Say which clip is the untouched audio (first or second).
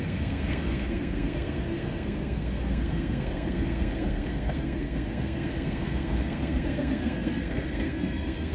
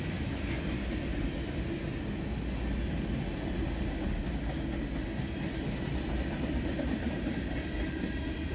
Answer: second